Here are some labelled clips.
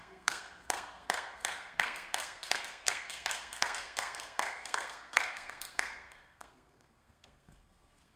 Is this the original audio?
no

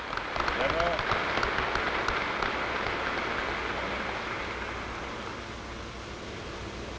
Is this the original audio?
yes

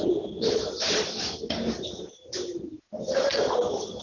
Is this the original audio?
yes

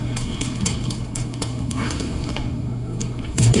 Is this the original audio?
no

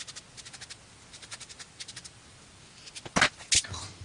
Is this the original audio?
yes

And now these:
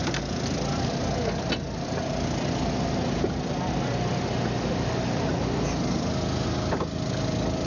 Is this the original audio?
yes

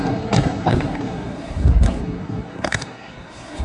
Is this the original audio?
no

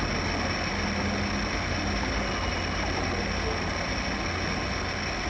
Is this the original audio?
yes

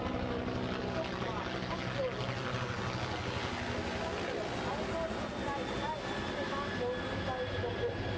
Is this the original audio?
yes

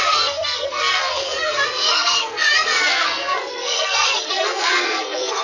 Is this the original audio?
no